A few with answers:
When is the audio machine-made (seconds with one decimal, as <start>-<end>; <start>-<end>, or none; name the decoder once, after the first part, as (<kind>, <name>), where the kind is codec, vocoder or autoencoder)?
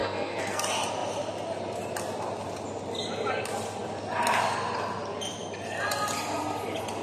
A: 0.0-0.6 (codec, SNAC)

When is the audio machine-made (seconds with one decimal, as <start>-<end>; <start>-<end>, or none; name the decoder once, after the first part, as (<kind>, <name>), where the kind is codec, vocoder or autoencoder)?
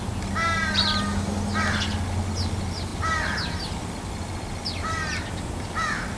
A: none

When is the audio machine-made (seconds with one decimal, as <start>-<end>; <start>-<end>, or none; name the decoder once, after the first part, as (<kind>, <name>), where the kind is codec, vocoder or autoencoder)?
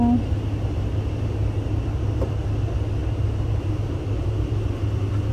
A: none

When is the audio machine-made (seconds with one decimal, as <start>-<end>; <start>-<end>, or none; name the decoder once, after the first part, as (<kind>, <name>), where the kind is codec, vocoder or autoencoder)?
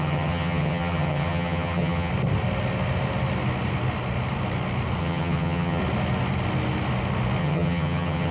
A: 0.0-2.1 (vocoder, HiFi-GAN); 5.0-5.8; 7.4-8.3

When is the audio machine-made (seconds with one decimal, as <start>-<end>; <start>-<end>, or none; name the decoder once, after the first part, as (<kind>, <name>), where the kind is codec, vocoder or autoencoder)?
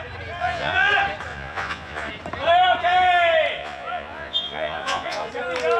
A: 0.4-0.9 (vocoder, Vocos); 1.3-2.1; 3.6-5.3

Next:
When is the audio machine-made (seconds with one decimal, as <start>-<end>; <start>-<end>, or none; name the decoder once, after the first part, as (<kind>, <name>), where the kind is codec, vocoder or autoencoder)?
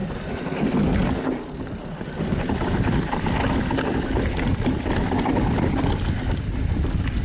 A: none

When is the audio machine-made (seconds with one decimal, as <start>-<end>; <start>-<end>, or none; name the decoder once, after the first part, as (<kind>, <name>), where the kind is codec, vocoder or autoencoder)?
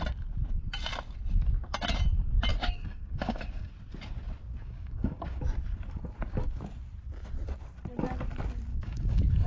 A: 2.5-3.7 (codec, DAC); 4.6-5.4; 8.7-9.5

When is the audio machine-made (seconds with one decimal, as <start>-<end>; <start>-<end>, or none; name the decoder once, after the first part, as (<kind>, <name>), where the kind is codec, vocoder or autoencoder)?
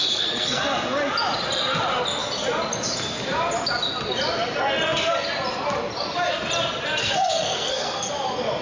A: 0.0-0.6 (codec, SNAC); 7.0-8.1